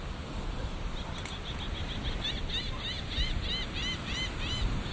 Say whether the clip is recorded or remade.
recorded